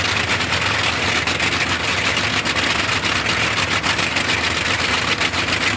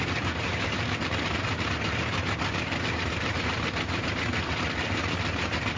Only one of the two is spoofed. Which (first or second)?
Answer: second